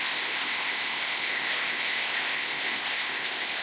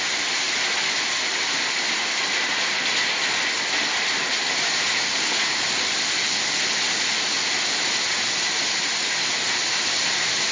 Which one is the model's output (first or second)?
first